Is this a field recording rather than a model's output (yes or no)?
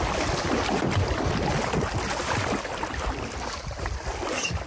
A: yes